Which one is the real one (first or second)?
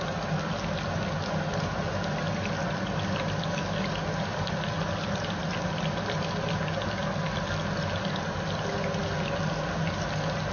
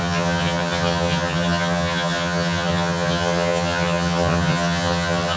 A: first